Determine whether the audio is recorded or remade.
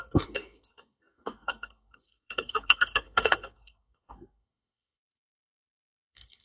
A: remade